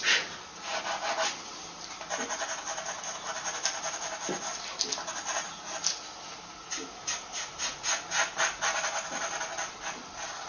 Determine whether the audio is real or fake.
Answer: real